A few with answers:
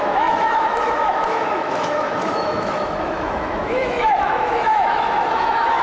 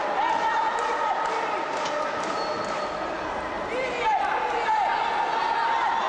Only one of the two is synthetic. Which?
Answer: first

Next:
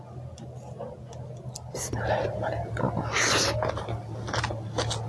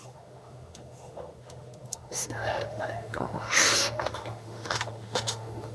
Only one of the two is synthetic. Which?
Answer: second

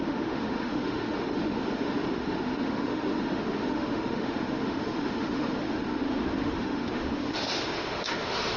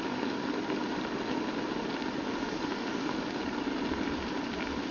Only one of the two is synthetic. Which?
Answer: first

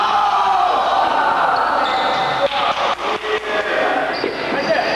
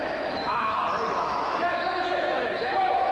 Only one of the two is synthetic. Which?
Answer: second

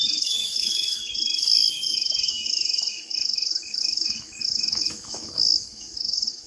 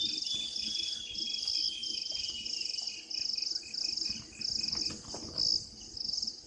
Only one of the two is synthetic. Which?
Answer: first